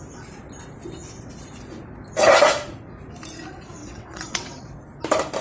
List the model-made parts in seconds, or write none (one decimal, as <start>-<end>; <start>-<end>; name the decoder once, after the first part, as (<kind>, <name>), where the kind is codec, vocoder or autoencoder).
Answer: 3.8-4.8 (vocoder, WaveNeXt)